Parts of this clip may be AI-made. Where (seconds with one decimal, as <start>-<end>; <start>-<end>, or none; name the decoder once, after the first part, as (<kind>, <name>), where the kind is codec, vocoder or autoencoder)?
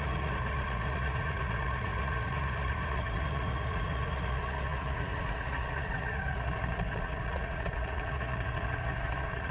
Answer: 0.0-9.5 (vocoder, Vocos)